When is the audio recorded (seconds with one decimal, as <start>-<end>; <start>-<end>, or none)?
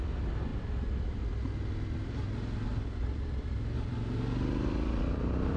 0.0-0.5; 1.2-2.7